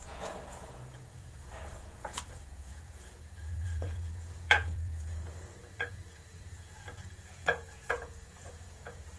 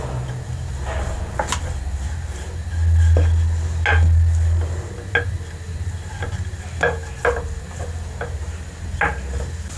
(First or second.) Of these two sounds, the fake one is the first